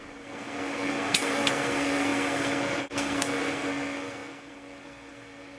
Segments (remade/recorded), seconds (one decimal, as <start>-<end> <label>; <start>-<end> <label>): 0.0-5.6 remade